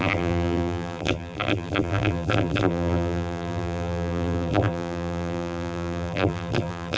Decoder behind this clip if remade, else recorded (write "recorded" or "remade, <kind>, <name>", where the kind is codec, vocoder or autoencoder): remade, vocoder, BigVGAN v2